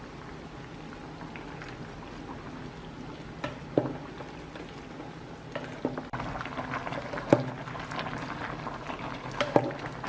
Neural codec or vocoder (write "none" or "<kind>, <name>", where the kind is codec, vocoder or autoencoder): none